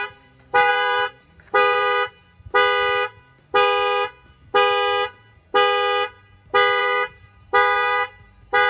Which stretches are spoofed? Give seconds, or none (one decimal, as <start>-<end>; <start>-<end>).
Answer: 0.0-2.2; 6.8-8.7